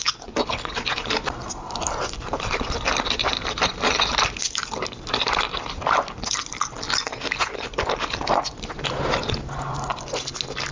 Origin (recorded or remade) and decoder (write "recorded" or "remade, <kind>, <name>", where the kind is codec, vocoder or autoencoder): recorded